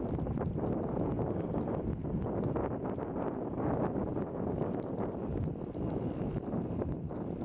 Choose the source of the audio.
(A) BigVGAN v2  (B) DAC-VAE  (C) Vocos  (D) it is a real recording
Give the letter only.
D